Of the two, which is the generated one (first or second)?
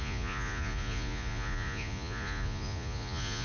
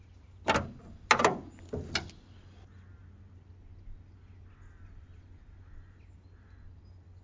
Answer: first